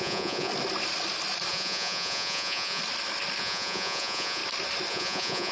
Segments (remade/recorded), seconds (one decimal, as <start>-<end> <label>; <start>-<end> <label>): 0.0-0.5 remade; 0.5-1.5 recorded; 1.5-2.8 remade; 2.8-3.4 recorded; 3.4-4.4 remade; 4.4-4.9 recorded; 4.9-5.5 remade